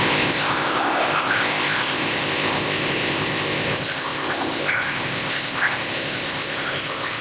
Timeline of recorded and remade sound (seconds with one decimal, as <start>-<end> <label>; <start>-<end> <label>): 0.0-7.2 remade

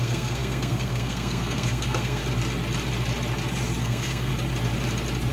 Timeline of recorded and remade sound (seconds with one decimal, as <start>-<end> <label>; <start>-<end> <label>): 0.0-2.2 remade; 2.2-3.8 recorded; 3.8-4.3 remade; 4.3-5.3 recorded

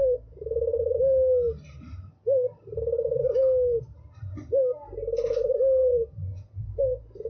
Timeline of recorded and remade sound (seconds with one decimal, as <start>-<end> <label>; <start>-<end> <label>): 0.0-5.8 recorded; 5.8-6.8 remade; 6.8-7.3 recorded

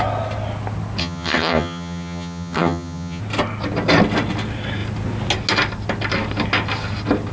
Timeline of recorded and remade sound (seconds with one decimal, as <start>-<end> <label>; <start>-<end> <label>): 0.0-1.0 recorded; 1.0-3.2 remade; 3.2-7.3 recorded

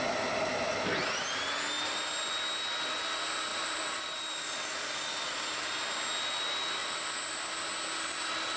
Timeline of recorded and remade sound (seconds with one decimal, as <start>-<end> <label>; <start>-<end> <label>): 0.0-3.5 recorded; 3.5-5.7 remade; 5.7-6.8 recorded; 6.8-7.6 remade; 7.6-8.6 recorded